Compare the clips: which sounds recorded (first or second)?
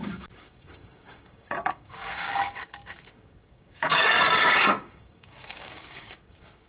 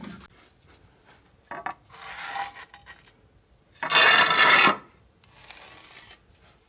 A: second